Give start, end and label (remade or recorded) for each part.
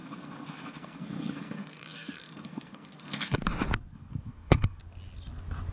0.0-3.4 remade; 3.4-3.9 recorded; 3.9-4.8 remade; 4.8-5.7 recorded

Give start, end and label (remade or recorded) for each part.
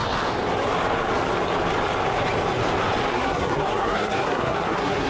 0.0-3.1 recorded; 3.1-5.1 remade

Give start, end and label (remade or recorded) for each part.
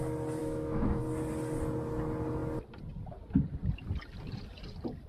0.0-0.4 recorded; 0.4-1.0 remade; 1.0-5.1 recorded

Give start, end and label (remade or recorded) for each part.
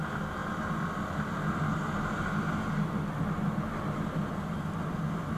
0.0-5.4 recorded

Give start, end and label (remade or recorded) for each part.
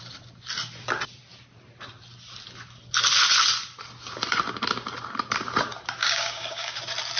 0.0-6.0 recorded; 6.0-6.8 remade; 6.8-7.2 recorded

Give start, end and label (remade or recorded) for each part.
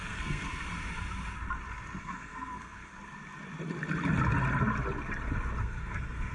0.0-0.6 remade; 0.6-2.0 recorded; 2.0-2.9 remade; 2.9-5.6 recorded; 5.6-6.3 remade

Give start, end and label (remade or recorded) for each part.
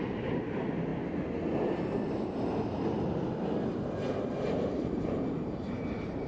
0.0-0.9 remade; 0.9-4.7 recorded; 4.7-6.3 remade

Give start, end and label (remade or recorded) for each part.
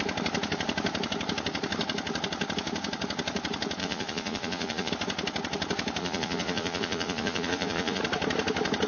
0.0-3.8 recorded; 3.8-4.9 remade; 4.9-6.0 recorded; 6.0-8.0 remade; 8.0-8.9 recorded